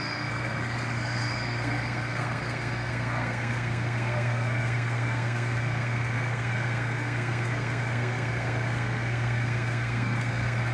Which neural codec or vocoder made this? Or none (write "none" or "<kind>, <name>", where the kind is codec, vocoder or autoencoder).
codec, SNAC